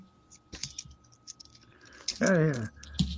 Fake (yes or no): no